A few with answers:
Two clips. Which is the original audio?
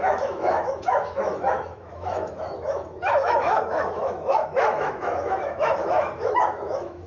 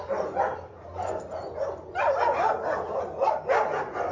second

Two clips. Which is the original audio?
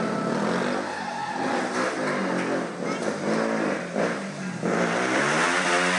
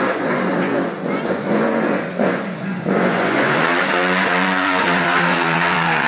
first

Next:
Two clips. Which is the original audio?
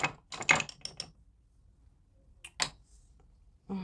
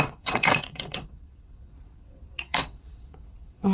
first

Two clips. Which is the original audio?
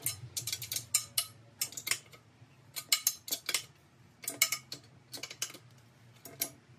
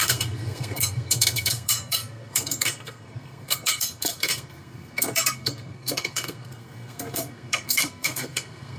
first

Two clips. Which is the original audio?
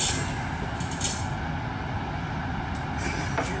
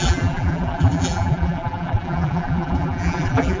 first